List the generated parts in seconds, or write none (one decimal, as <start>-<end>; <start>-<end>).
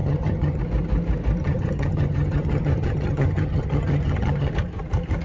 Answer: 0.0-0.6; 1.4-4.5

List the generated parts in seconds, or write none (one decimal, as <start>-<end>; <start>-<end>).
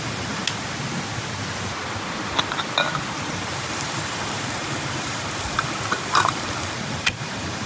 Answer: 0.0-0.4; 3.3-7.7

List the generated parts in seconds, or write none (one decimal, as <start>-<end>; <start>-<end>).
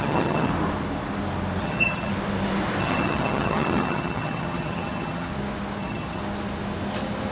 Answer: 0.0-0.5; 1.6-2.1; 2.8-5.3; 5.8-6.2